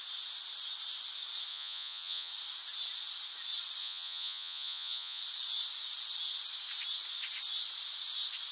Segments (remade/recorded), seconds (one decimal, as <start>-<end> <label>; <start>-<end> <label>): 0.0-1.5 recorded; 1.5-2.3 remade; 2.3-3.8 recorded; 3.8-5.2 remade; 5.2-8.5 recorded